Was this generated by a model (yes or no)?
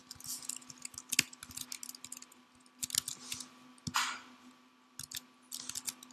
no